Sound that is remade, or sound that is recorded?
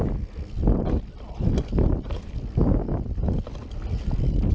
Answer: recorded